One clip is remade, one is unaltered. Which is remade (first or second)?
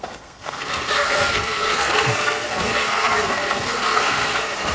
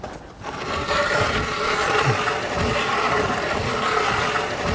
first